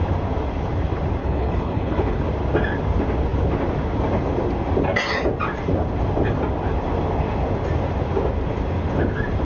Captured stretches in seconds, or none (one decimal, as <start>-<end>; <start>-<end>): 0.0-1.2; 2.2-9.4

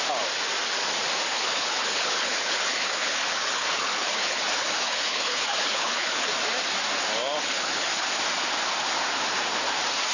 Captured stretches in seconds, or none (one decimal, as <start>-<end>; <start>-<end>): 0.0-1.3; 6.3-7.4; 8.1-10.1

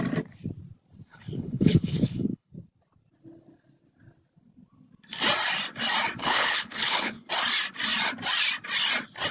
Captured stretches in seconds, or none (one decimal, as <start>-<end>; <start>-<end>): 0.0-1.1; 2.5-6.2; 7.3-9.3